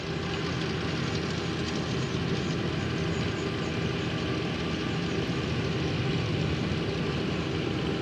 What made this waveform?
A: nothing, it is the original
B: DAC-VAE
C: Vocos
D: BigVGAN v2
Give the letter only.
A